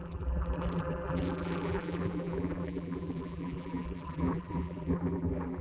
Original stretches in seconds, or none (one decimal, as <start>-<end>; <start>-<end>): none